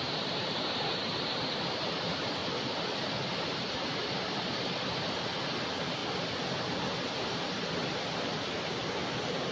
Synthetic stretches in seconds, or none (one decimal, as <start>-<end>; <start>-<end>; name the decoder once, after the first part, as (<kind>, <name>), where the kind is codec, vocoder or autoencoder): 0.0-2.4 (vocoder, BigVGAN v2); 3.4-6.0